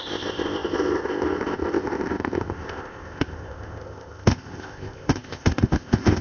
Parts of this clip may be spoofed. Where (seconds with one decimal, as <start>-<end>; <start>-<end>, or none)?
0.0-6.2